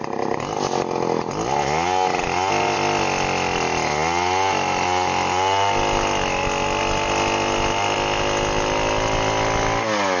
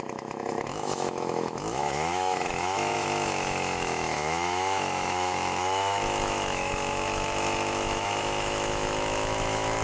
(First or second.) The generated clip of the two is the second